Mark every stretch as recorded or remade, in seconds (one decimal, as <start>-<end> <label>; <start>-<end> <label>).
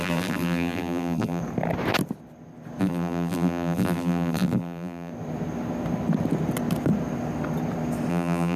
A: 0.0-1.4 remade; 1.4-2.8 recorded; 2.8-5.1 remade; 5.1-8.1 recorded; 8.1-8.6 remade